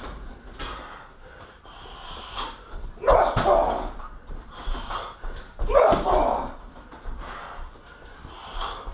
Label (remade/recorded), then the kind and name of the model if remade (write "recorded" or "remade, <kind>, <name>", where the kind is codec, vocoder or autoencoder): recorded